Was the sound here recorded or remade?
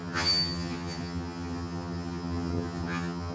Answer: remade